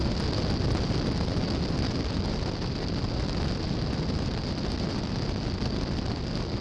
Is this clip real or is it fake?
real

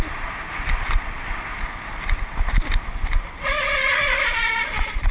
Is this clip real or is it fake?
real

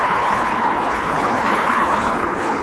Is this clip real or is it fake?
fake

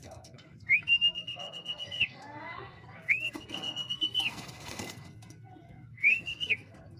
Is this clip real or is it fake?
fake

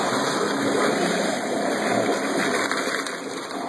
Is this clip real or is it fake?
real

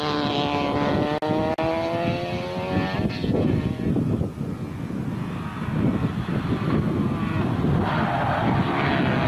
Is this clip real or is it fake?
real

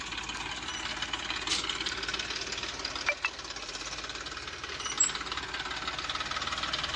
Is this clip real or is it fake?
real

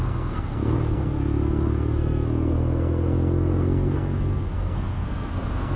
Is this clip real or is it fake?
fake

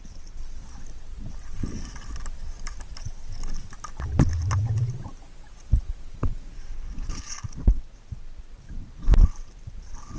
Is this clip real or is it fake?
real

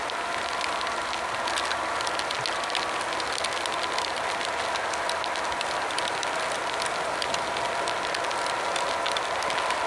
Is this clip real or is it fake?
real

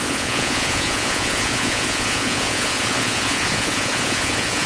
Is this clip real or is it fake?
fake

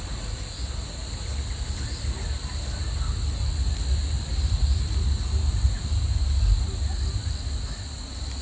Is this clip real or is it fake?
real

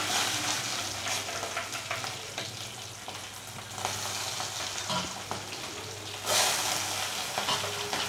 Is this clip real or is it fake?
real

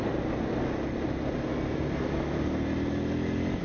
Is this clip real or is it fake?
real